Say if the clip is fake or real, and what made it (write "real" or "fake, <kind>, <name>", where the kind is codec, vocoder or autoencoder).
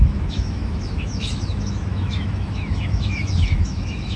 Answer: fake, autoencoder, DAC-VAE